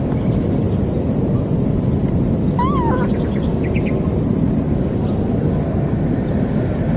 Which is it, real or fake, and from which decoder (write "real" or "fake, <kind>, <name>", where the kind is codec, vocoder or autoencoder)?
real